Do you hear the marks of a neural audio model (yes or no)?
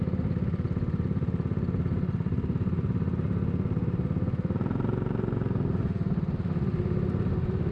no